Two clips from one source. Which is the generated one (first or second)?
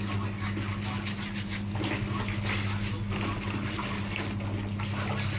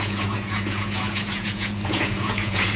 second